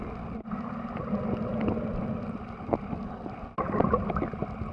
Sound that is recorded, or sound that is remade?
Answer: recorded